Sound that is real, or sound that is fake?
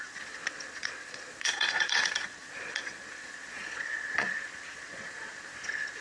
fake